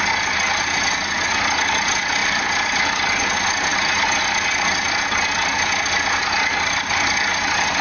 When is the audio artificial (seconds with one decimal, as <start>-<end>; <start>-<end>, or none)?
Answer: 2.2-3.2; 3.7-4.2